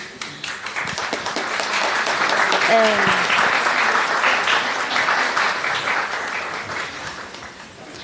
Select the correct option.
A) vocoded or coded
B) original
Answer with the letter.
B